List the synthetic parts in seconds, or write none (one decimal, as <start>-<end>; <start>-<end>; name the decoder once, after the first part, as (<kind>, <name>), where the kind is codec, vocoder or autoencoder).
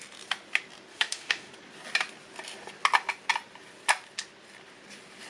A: 0.9-1.5 (autoencoder, DAC-VAE)